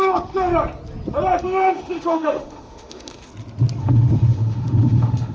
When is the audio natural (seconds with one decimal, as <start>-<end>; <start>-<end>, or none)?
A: 0.5-1.4; 3.3-3.8